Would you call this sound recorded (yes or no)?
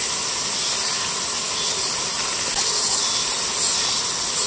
yes